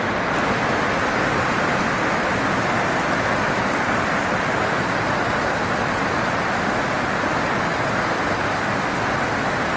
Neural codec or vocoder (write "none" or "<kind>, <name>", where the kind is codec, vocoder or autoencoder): none